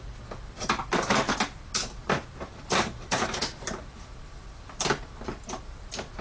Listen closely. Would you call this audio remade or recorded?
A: recorded